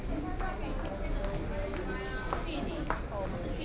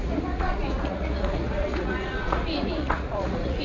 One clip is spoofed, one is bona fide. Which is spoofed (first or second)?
second